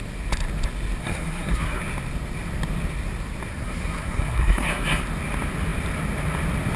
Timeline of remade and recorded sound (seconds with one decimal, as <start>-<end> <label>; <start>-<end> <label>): 0.0-1.0 recorded; 1.0-1.8 remade; 1.8-3.5 recorded; 3.5-5.0 remade; 5.0-6.8 recorded